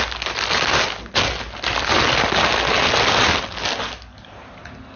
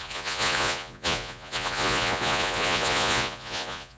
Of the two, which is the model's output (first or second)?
second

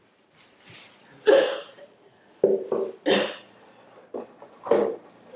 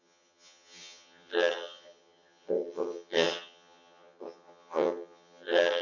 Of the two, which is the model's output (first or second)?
second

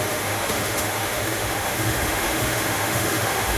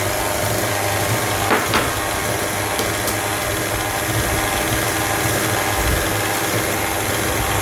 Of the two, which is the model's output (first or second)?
first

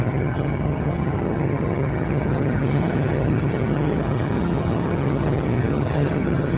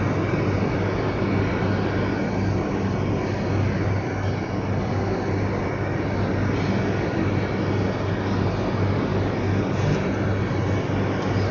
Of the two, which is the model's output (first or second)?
first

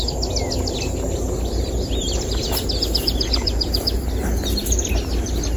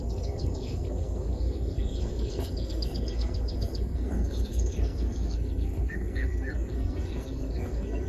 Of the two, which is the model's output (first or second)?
second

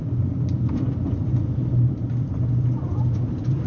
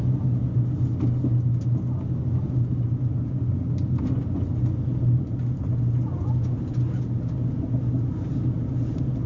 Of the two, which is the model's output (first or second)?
first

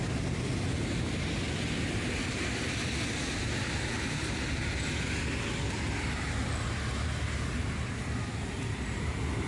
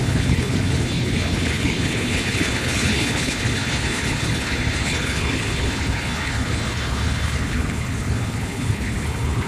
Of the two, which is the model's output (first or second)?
second